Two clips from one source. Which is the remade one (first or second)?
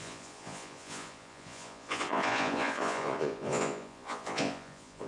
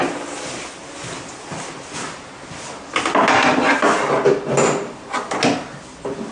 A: first